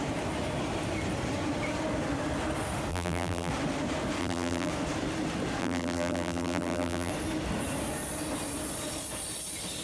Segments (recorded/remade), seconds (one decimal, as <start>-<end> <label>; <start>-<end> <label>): 0.0-2.9 recorded; 2.9-3.5 remade; 3.5-4.2 recorded; 4.2-4.7 remade; 4.7-5.6 recorded; 5.6-7.1 remade; 7.1-9.8 recorded